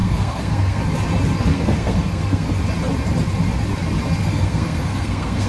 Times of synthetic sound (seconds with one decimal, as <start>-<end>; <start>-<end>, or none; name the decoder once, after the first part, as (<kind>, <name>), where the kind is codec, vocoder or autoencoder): 0.0-0.8 (codec, SNAC); 1.5-2.6; 4.2-5.5